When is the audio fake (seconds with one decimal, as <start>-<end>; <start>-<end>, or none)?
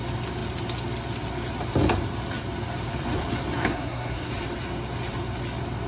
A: 3.7-4.3